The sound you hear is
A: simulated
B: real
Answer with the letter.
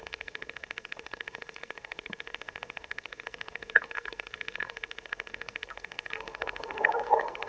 A